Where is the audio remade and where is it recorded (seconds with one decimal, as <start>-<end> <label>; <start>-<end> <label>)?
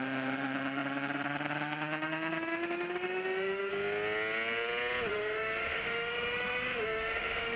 0.0-3.7 remade; 3.7-5.1 recorded; 5.1-7.6 remade